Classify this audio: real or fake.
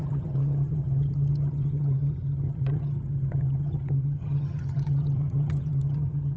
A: fake